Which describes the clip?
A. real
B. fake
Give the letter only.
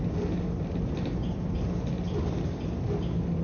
A